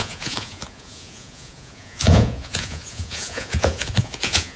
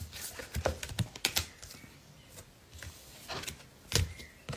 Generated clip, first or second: first